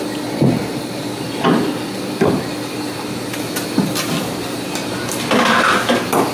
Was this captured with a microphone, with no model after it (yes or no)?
yes